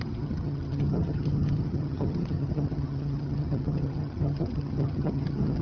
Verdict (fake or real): fake